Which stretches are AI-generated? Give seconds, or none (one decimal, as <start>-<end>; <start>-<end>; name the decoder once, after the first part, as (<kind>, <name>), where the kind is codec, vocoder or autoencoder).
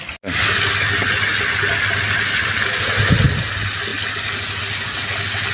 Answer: none